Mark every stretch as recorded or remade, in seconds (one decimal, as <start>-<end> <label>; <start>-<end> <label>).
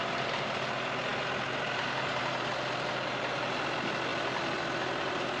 0.0-1.1 recorded; 1.1-2.5 remade; 2.5-5.4 recorded